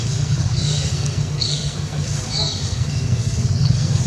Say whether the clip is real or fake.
fake